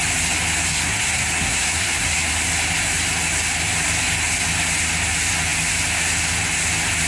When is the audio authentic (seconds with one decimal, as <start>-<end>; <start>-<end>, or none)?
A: 0.0-0.7; 2.3-7.1